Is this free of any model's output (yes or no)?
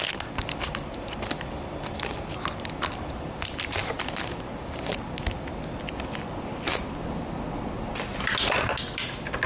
yes